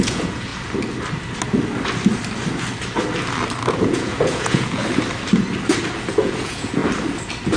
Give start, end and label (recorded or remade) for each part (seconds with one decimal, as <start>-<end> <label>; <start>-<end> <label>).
0.0-0.5 remade; 0.5-3.7 recorded; 3.7-4.8 remade; 4.8-6.1 recorded; 6.1-6.8 remade; 6.8-7.6 recorded